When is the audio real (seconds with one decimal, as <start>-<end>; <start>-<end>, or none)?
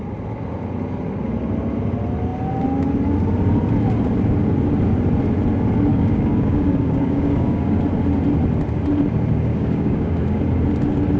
0.0-5.9; 7.7-9.5; 10.4-11.2